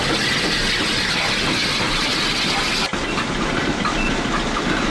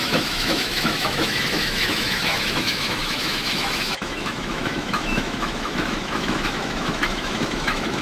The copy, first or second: second